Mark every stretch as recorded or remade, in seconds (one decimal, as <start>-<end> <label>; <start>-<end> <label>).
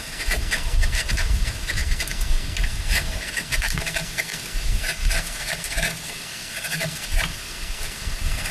0.0-8.5 remade